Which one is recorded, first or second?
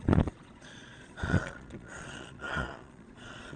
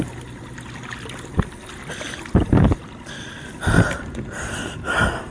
second